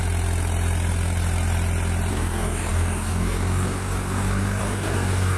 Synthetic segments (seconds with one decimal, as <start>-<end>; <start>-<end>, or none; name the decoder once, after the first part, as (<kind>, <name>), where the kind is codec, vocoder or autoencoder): 2.1-5.4 (codec, DAC)